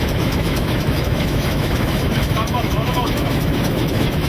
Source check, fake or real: fake